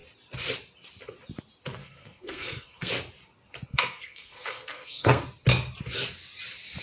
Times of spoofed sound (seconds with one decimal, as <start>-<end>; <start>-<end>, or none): 1.8-2.9; 3.7-5.2